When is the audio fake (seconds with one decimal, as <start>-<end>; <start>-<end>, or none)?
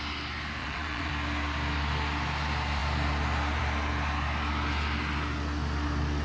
0.6-1.1